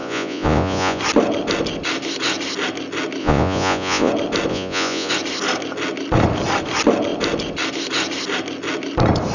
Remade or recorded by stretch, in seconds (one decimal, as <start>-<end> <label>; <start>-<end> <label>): 0.0-1.0 remade; 1.0-3.2 recorded; 3.2-4.1 remade; 4.1-4.5 recorded; 4.5-5.1 remade; 5.1-9.3 recorded